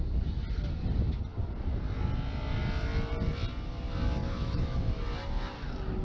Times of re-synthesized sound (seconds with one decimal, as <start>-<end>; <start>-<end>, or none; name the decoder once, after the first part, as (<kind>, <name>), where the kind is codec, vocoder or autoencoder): 4.2-5.0 (autoencoder, DAC-VAE)